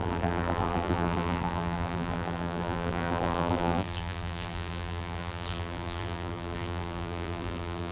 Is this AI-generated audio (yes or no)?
yes